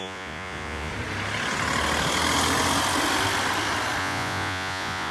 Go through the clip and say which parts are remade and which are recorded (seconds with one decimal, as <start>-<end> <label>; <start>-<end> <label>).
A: 0.0-0.9 remade; 0.9-4.0 recorded; 4.0-5.1 remade

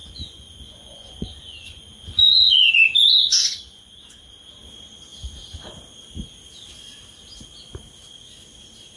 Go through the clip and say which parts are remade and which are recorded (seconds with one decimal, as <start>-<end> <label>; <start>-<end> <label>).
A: 0.0-2.7 remade; 2.7-3.3 recorded; 3.3-4.0 remade; 4.0-9.0 recorded

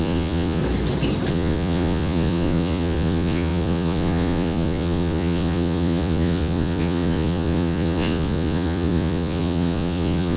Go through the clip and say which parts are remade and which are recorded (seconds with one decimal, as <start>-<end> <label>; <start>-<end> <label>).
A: 0.0-0.6 remade; 0.6-1.3 recorded; 1.3-10.4 remade

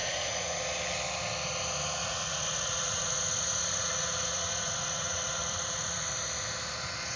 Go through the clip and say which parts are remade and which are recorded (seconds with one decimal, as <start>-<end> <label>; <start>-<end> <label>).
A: 0.0-0.6 remade; 0.6-2.0 recorded; 2.0-6.1 remade; 6.1-7.2 recorded

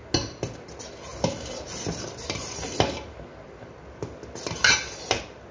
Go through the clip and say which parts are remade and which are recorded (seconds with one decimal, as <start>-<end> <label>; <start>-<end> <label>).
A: 0.0-5.5 recorded

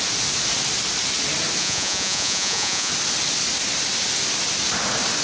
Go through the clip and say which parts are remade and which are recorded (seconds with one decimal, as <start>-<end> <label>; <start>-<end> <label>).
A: 0.0-1.6 recorded; 1.6-2.9 remade; 2.9-5.2 recorded

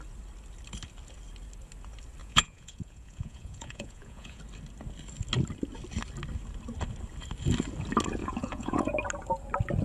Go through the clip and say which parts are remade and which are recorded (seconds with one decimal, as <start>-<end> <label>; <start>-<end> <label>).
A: 0.0-2.2 recorded; 2.2-4.4 remade; 4.4-8.2 recorded; 8.2-8.8 remade; 8.8-9.8 recorded

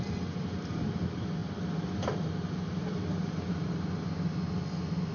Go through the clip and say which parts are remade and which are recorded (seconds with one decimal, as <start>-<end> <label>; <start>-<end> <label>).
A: 0.0-5.1 recorded